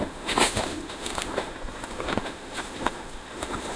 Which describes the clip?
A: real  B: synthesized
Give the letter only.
B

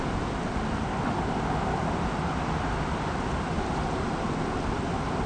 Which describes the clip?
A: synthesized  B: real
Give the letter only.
B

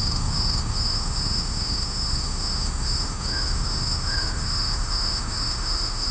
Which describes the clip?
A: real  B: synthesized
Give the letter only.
B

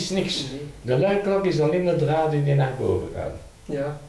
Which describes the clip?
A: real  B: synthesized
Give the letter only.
B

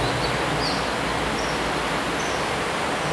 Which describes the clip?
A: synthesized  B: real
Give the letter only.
B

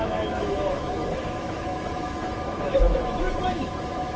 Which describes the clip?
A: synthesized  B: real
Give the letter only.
A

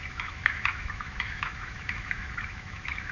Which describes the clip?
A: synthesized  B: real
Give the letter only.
A